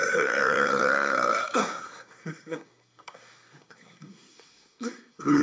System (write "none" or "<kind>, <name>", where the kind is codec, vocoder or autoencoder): codec, SNAC